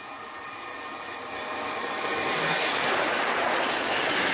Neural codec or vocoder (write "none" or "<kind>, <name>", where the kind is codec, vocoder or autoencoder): none